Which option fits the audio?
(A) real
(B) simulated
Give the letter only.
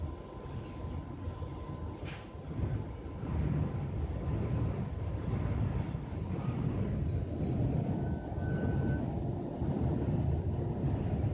A